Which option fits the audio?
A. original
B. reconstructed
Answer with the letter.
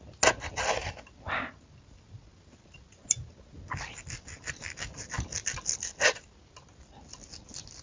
A